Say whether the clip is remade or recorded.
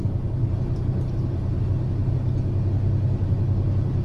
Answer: recorded